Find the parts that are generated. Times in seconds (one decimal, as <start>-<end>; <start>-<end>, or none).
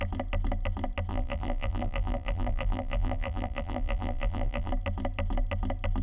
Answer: 1.1-4.7